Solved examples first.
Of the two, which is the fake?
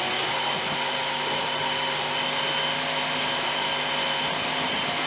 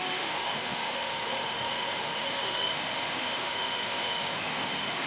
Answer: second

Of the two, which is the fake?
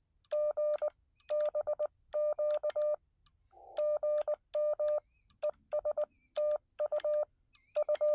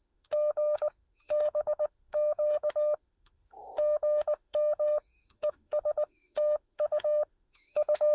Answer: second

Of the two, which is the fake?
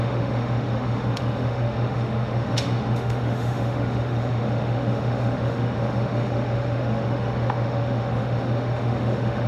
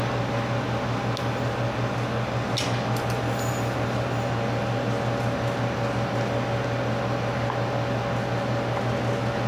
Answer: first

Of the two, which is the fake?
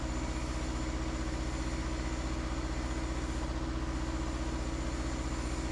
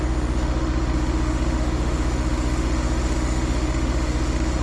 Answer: second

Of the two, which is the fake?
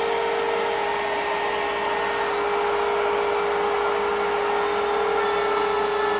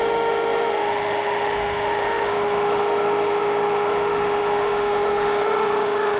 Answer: second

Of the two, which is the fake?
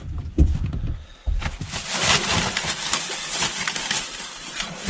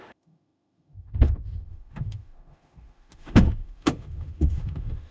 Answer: second